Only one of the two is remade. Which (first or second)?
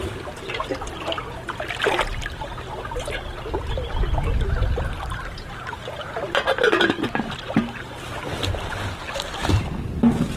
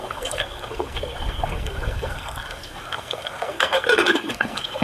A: second